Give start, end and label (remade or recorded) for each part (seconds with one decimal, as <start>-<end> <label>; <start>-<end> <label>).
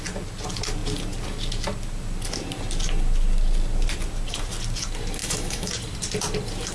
0.0-5.2 recorded; 5.2-5.7 remade; 5.7-6.7 recorded